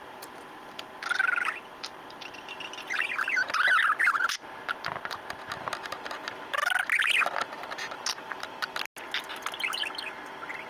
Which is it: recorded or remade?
recorded